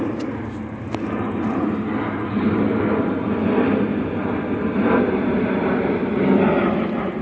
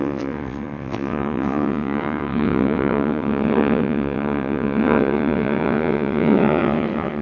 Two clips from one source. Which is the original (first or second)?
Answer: first